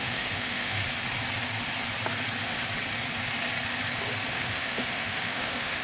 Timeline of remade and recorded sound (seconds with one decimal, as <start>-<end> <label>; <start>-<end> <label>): 0.0-0.8 remade; 0.8-4.3 recorded; 4.3-5.8 remade